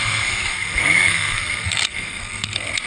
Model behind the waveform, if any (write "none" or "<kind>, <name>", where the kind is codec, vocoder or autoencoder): codec, SNAC